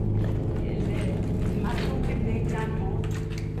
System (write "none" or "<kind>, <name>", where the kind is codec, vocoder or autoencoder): none